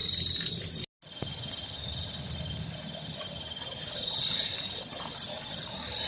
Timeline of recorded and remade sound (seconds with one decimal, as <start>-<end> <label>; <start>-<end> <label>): 0.0-6.1 recorded